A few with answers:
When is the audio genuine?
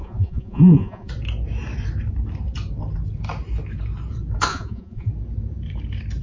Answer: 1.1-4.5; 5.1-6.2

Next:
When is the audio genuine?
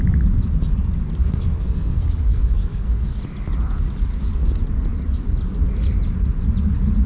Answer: 0.0-1.2; 3.2-7.1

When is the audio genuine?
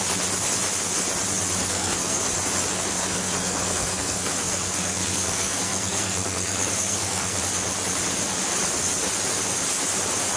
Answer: 0.0-1.6; 2.2-2.7; 7.4-10.4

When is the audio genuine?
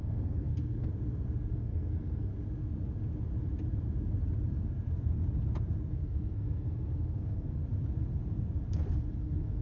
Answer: 0.9-1.5; 2.3-5.9; 7.6-9.1